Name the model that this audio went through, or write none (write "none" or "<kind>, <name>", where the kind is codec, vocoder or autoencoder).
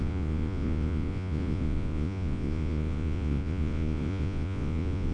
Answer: vocoder, Vocos